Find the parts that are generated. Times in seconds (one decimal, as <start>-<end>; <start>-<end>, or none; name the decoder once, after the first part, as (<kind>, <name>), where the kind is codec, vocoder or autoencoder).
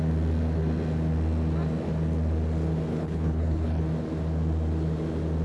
2.9-3.8 (codec, HILCodec)